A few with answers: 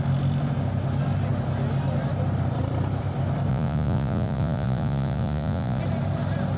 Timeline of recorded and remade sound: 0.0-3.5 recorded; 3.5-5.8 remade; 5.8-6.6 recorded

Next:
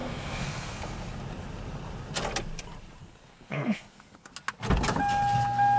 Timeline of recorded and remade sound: 0.0-0.8 remade; 0.8-3.0 recorded; 3.0-4.3 remade; 4.3-5.8 recorded

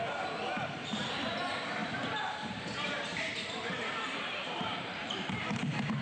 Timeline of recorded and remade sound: 0.0-1.8 recorded; 1.8-5.4 remade; 5.4-6.0 recorded

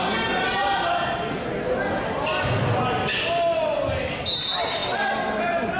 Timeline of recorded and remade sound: 0.0-5.8 recorded